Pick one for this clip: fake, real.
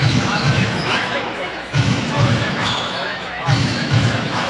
fake